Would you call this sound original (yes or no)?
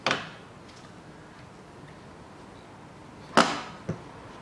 yes